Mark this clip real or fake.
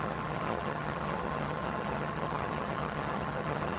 fake